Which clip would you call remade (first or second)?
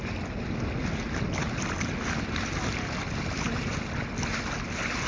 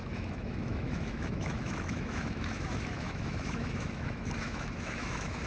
second